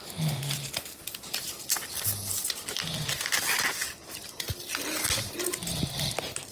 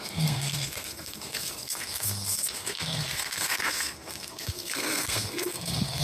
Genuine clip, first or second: first